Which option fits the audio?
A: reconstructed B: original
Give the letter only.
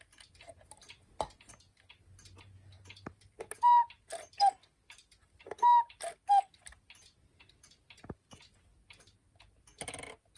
B